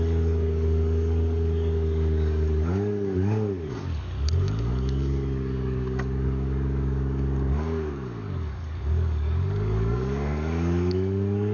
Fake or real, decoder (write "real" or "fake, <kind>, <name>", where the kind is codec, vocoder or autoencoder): fake, codec, DAC